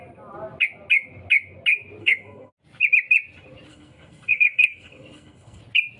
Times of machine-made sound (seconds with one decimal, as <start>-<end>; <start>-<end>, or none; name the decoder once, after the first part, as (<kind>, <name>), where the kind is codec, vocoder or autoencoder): 2.0-2.5 (codec, SNAC); 3.7-5.6